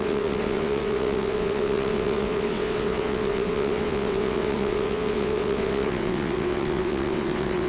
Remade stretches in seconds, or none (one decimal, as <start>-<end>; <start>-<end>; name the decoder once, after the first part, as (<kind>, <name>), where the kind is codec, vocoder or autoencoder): 0.0-7.7 (vocoder, WaveNeXt)